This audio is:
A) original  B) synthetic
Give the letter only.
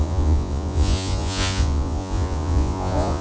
B